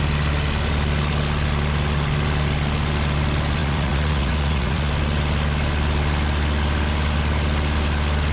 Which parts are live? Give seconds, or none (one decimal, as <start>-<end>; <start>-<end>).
0.0-3.6; 4.9-8.3